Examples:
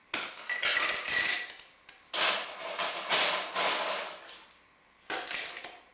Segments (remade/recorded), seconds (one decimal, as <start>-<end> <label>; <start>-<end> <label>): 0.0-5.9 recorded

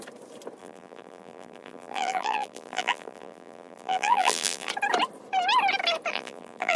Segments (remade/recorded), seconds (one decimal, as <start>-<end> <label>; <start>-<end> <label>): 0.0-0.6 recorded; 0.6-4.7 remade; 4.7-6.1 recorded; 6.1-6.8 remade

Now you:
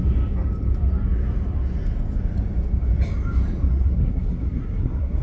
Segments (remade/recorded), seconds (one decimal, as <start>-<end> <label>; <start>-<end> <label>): 0.0-3.7 recorded; 3.7-5.2 remade